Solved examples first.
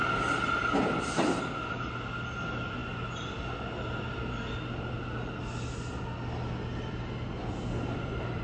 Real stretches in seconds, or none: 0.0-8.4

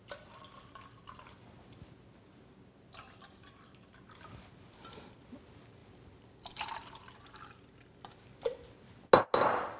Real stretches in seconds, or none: 0.0-9.8

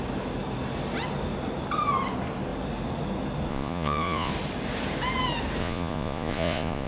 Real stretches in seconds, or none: 0.0-3.5; 4.3-5.6

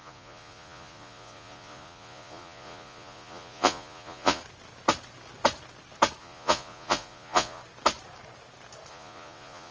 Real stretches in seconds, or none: 4.4-6.2; 7.6-8.9

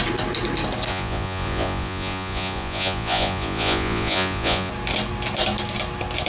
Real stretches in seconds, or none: 0.0-0.9; 4.7-6.3

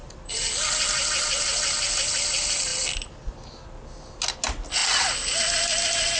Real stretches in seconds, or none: 0.0-6.2